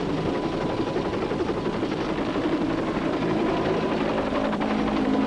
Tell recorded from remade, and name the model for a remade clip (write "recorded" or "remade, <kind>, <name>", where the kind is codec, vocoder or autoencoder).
remade, vocoder, BigVGAN v2